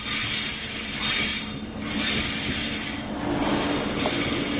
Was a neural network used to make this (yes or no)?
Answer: no